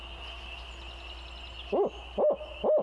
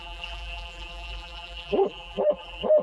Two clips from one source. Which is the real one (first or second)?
first